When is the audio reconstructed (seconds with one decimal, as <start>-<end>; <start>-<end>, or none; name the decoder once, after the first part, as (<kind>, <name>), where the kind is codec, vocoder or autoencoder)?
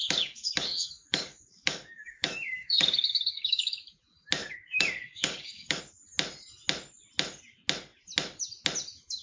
0.0-3.8 (codec, DAC); 4.4-5.8